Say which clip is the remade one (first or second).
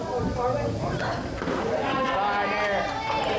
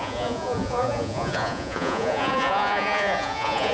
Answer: second